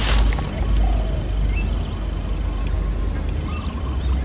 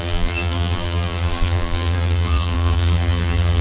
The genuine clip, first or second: first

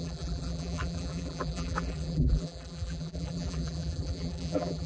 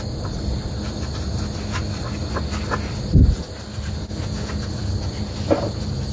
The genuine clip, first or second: second